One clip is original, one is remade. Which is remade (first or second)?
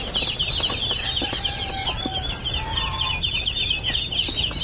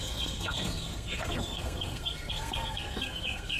second